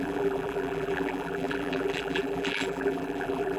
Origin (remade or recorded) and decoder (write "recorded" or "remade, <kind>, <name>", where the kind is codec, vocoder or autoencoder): remade, vocoder, BigVGAN v2